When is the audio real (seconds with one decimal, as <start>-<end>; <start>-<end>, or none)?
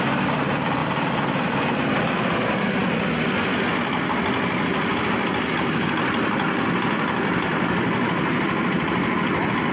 0.0-9.7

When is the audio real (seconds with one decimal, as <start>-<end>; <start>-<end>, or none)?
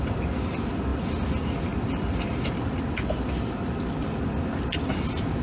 0.0-5.4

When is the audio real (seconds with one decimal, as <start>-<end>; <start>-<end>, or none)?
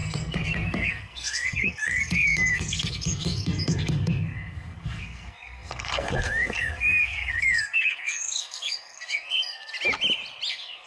9.7-10.5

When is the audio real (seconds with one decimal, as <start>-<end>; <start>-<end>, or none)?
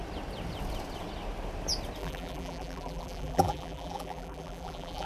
0.0-2.0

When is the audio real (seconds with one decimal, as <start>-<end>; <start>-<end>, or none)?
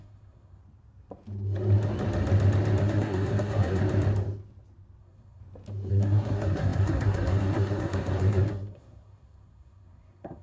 0.6-2.8; 3.8-5.0; 5.4-5.9